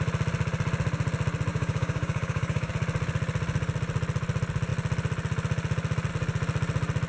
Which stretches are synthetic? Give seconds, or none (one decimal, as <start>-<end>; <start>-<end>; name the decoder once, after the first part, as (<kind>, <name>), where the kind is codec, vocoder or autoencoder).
1.5-2.7 (codec, DAC)